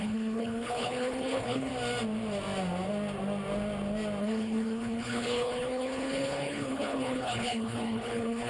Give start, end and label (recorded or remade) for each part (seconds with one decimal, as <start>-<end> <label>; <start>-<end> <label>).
0.0-1.7 remade; 1.7-4.2 recorded; 4.2-8.5 remade